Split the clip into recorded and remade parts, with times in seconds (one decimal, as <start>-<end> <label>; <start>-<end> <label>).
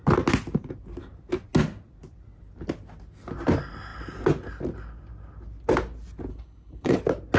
0.0-6.3 recorded; 6.3-7.0 remade; 7.0-7.4 recorded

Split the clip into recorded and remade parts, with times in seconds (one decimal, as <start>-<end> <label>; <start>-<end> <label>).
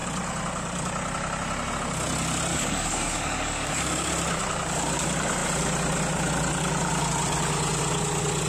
0.0-2.5 recorded; 2.5-4.1 remade; 4.1-8.5 recorded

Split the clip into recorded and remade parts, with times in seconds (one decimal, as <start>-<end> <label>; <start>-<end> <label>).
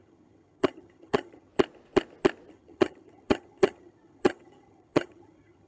0.0-1.5 remade; 1.5-2.5 recorded; 2.5-5.7 remade